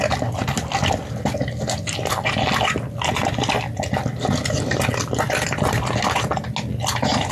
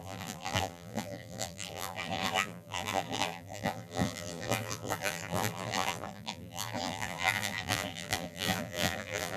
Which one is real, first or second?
first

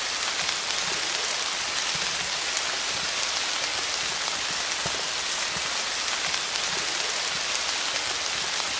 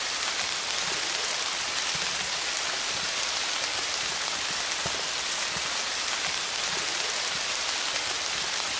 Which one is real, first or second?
first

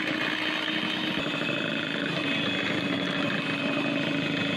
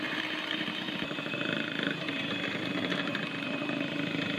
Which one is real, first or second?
first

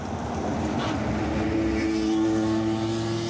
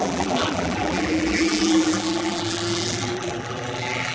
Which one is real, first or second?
first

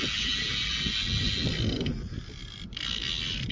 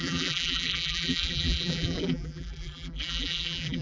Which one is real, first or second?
first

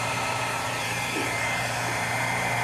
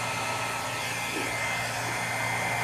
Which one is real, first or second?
second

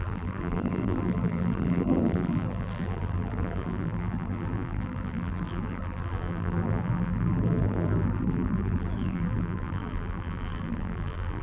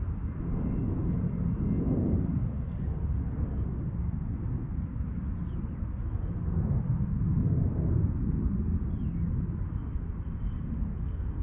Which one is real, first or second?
second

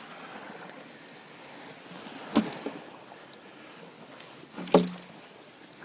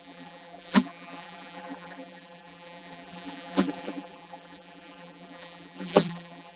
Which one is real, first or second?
first